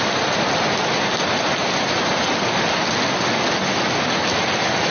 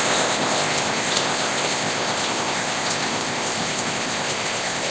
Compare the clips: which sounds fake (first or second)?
second